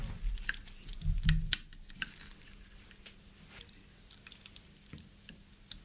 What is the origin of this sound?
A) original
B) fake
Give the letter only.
A